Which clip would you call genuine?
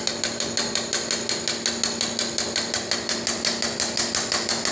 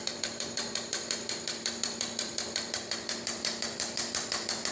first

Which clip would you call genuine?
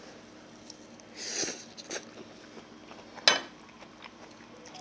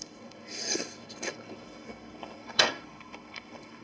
first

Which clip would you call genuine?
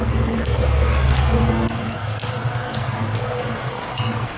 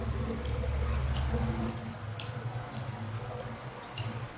second